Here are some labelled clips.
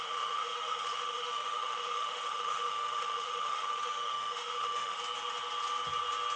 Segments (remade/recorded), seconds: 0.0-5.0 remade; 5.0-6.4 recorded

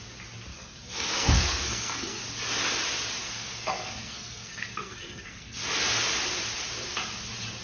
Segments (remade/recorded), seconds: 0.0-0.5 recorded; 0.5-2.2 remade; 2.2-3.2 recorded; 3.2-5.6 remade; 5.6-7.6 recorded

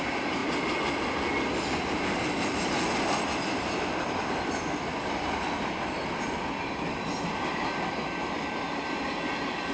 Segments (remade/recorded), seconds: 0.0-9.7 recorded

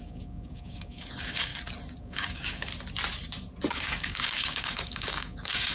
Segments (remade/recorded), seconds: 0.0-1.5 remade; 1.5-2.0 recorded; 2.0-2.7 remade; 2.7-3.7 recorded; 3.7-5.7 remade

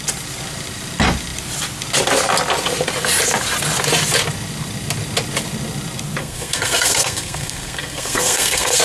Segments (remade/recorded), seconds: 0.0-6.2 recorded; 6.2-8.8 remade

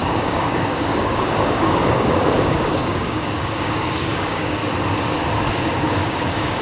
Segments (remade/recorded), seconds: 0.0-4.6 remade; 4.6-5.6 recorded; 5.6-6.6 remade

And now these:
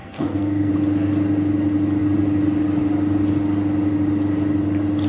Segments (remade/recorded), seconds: 0.0-0.7 remade; 0.7-5.1 recorded